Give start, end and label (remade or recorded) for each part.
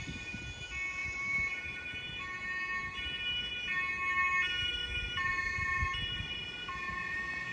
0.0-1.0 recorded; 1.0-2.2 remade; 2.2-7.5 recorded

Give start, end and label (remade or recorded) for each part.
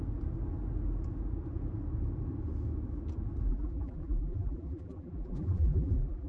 0.0-3.5 recorded; 3.5-6.3 remade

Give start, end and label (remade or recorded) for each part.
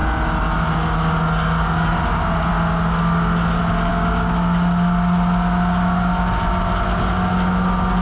0.0-8.0 recorded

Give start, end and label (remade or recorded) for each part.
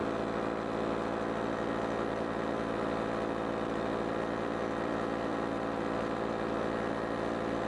0.0-2.1 recorded; 2.1-7.7 remade